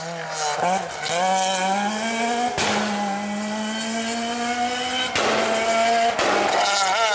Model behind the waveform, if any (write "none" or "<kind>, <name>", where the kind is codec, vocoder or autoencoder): none